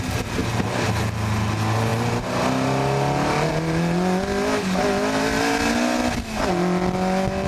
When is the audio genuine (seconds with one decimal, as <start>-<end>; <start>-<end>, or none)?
0.0-7.5